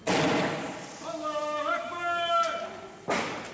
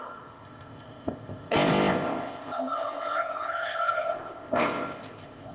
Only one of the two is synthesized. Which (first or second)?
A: second